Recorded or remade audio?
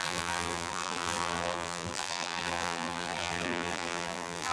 remade